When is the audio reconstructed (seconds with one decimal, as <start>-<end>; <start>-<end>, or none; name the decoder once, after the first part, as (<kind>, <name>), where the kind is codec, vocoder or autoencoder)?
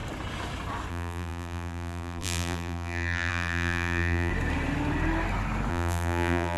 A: 0.9-4.3 (vocoder, BigVGAN v2); 5.7-6.6